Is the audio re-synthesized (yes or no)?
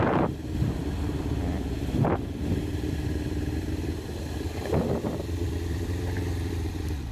yes